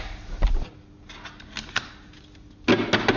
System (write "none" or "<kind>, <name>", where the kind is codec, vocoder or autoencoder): none